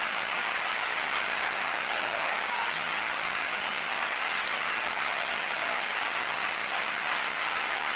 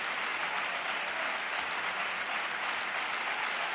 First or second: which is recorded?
second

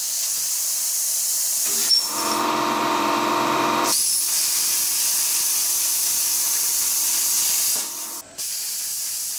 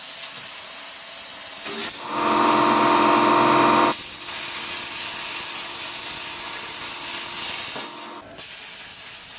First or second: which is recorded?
second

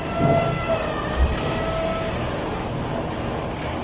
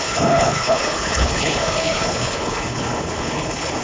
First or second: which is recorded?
first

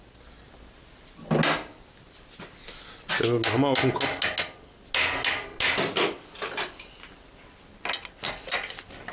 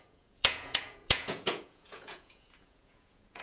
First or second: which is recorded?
first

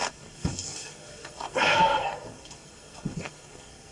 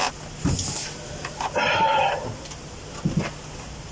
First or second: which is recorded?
second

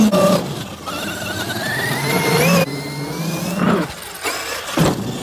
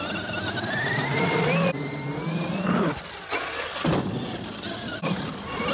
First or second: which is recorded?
first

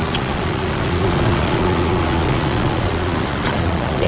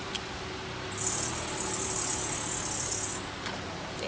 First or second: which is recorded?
second